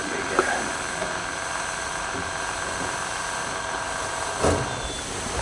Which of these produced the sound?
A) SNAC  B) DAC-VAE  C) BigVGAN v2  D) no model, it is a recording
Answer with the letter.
D